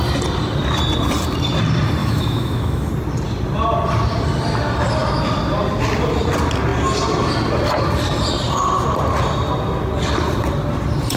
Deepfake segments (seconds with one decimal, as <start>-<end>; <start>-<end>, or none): 2.0-2.9